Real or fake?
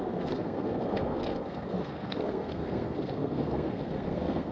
fake